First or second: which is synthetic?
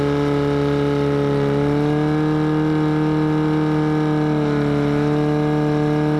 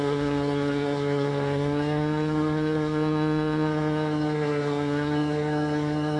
second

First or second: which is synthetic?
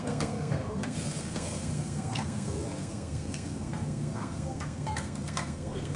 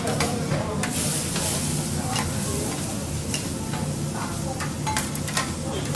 first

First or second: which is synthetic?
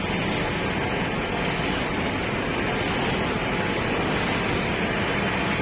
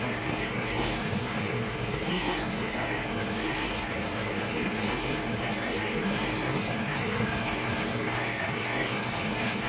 second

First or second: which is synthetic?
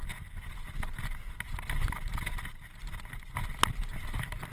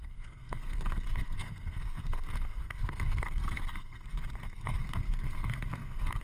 second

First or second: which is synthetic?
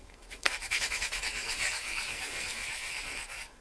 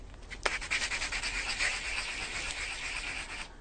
first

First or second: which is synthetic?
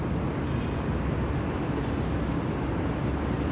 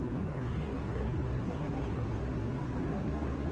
second